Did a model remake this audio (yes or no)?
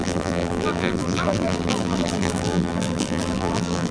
yes